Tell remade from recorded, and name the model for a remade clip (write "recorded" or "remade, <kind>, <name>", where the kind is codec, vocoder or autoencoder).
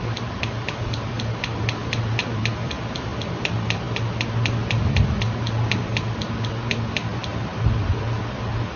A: recorded